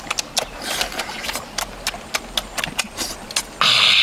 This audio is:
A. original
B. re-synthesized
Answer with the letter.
A